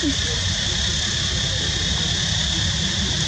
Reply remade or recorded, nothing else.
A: recorded